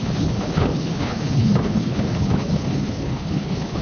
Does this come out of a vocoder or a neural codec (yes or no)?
yes